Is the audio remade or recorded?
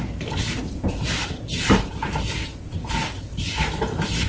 recorded